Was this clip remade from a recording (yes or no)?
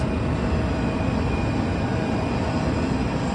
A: no